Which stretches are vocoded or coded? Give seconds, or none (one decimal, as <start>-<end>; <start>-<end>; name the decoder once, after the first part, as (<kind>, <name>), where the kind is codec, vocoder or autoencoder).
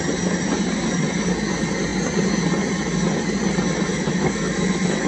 3.9-5.1 (autoencoder, DAC-VAE)